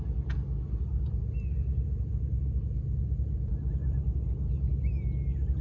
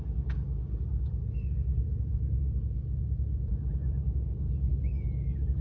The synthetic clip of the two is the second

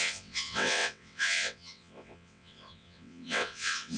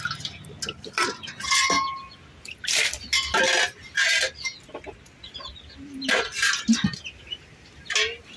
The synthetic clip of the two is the first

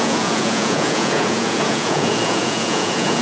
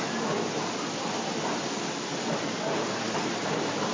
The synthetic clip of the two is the first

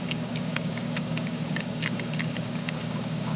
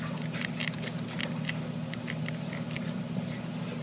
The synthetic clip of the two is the first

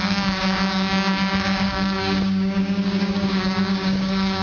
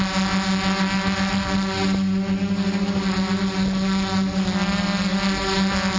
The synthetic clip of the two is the first